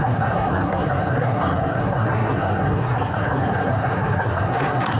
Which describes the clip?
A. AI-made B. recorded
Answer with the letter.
A